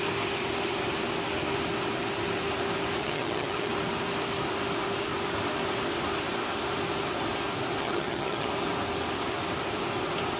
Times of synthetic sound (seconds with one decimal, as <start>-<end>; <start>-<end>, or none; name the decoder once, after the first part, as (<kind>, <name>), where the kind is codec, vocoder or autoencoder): 3.0-3.7 (vocoder, HiFi-GAN); 7.8-8.5